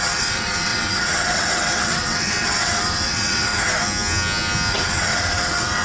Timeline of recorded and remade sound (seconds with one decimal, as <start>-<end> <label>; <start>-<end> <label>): 0.0-3.5 remade; 3.5-4.7 recorded; 4.7-5.8 remade

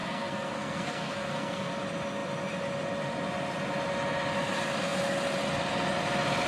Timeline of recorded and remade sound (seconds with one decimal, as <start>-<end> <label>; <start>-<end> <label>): 0.0-1.7 remade; 1.7-6.5 recorded

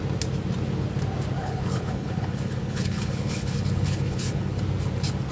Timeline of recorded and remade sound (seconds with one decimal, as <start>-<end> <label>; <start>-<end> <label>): 0.0-1.4 recorded; 1.4-4.6 remade; 4.6-5.3 recorded

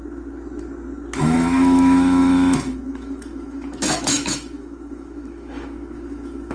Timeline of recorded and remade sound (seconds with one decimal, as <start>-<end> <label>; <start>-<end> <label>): 0.0-1.2 recorded; 1.2-6.5 remade

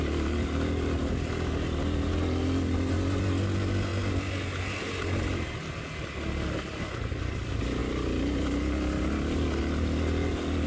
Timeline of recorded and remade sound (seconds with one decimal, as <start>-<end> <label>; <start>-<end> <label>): 0.0-10.7 recorded